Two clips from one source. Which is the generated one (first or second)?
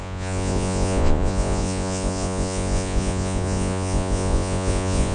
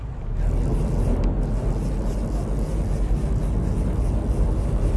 first